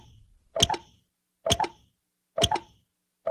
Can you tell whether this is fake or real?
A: real